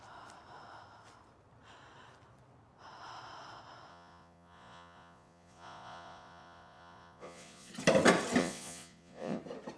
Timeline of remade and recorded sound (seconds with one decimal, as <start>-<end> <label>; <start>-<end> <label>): 0.0-3.9 recorded; 3.9-7.7 remade; 7.7-8.4 recorded; 8.4-9.4 remade; 9.4-9.8 recorded